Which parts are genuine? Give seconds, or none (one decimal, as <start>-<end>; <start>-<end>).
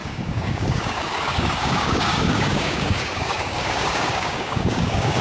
none